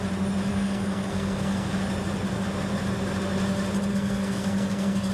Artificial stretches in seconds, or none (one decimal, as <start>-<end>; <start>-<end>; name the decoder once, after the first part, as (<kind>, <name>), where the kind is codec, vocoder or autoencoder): 0.5-1.8 (codec, SNAC); 3.9-5.1